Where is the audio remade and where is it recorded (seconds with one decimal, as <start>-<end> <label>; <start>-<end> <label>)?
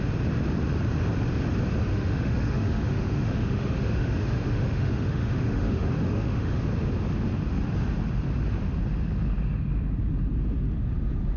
0.0-1.9 recorded; 1.9-6.6 remade; 6.6-11.4 recorded